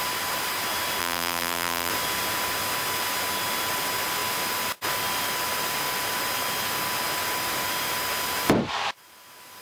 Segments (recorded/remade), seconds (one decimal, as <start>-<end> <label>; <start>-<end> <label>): 0.0-1.0 recorded; 1.0-1.9 remade; 1.9-9.6 recorded